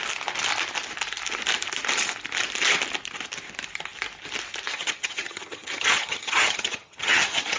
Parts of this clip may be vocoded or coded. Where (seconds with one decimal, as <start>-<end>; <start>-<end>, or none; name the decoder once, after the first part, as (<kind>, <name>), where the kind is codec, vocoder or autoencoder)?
4.7-7.6 (vocoder, HiFi-GAN)